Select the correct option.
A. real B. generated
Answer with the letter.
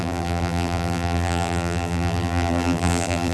B